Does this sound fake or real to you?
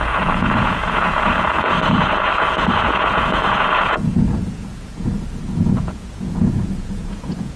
fake